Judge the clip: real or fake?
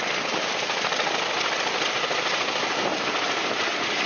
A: real